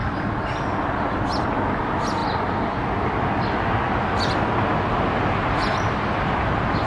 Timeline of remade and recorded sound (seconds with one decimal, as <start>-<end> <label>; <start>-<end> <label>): 0.0-6.9 recorded